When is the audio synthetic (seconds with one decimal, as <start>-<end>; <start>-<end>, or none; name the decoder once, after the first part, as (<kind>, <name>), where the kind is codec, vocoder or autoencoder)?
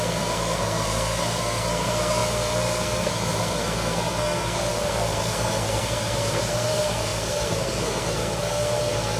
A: 0.0-9.2 (codec, SNAC)